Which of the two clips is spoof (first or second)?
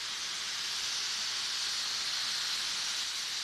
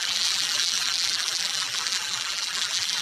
second